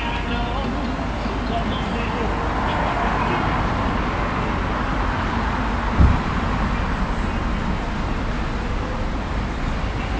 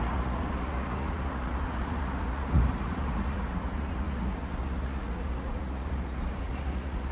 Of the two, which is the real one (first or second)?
first